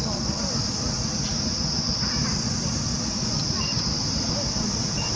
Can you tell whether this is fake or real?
real